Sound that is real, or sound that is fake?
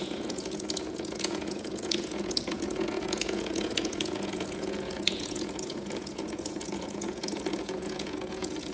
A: fake